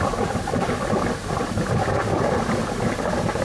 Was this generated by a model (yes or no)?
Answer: no